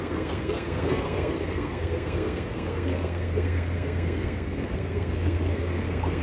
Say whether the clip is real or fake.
fake